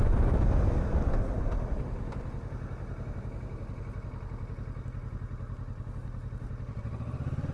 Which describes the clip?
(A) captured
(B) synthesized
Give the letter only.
A